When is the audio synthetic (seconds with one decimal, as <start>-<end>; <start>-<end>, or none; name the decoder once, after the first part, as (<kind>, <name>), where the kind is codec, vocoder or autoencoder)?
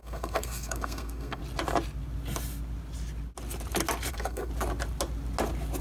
0.0-1.4 (codec, SNAC); 4.1-4.5